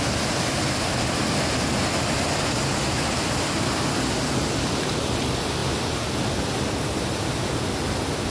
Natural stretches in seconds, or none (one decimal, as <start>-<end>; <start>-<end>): 0.0-8.3